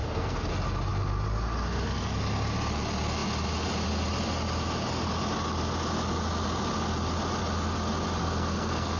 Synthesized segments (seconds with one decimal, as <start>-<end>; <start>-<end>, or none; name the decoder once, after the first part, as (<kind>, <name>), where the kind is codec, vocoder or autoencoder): 0.0-0.5 (codec, SNAC); 8.2-9.0